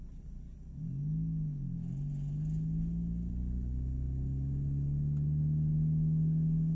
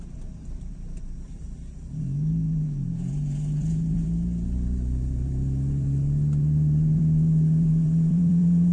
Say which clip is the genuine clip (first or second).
first